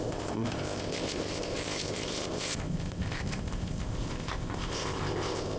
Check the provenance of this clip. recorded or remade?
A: remade